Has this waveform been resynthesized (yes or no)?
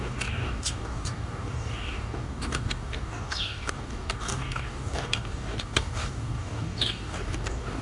yes